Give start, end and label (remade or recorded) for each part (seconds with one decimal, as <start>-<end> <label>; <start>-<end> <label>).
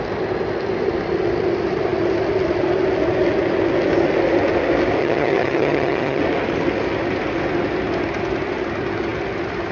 0.0-5.0 recorded; 5.0-6.2 remade; 6.2-9.7 recorded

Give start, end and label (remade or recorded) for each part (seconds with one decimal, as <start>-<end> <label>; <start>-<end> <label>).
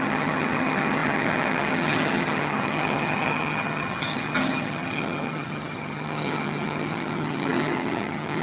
0.0-8.4 remade